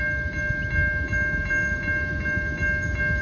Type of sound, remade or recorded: recorded